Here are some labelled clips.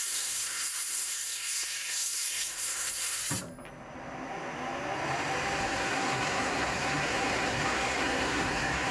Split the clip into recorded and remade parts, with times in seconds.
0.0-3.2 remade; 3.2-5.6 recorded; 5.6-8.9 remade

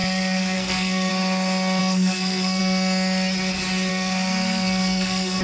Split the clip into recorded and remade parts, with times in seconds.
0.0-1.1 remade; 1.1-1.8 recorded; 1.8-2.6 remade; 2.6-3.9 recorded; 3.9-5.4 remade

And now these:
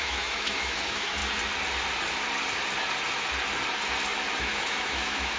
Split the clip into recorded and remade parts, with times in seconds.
0.0-1.2 remade; 1.2-4.4 recorded; 4.4-5.4 remade